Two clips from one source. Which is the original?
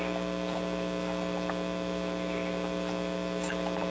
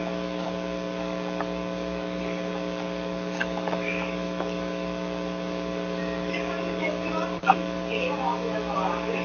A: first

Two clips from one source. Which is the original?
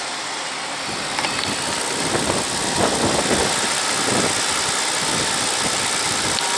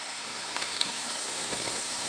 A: first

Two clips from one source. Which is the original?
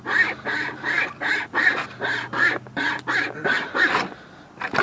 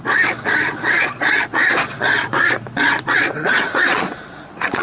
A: first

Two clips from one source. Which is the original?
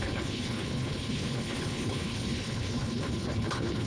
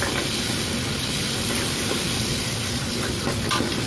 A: second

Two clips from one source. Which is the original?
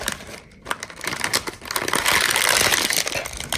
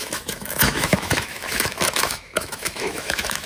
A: first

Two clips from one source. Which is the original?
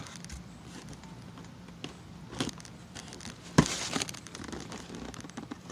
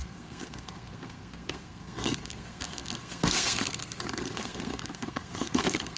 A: first